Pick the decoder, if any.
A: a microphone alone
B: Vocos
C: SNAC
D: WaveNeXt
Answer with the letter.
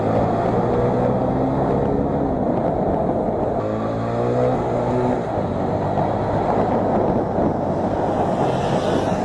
A